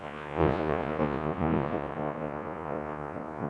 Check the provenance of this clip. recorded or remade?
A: remade